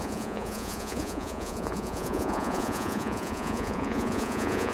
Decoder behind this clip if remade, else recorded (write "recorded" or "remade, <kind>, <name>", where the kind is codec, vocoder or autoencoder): remade, vocoder, Vocos